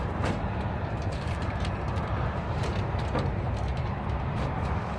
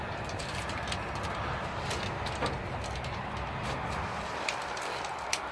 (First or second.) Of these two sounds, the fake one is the first